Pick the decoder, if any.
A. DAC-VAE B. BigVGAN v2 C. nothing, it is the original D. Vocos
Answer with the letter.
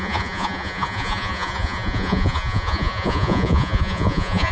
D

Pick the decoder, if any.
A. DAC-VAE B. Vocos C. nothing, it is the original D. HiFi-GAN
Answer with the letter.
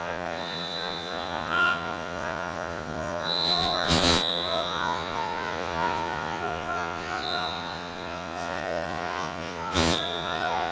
B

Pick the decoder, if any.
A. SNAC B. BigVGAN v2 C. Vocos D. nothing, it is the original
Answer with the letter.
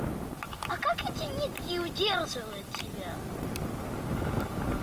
D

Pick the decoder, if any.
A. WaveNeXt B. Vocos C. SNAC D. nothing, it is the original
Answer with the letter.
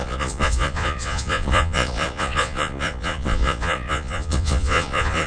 B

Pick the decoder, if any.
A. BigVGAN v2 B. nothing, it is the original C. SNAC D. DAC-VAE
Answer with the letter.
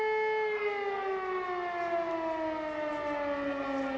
B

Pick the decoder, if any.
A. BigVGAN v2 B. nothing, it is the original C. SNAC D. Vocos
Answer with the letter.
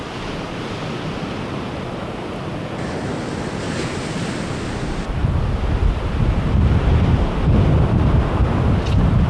B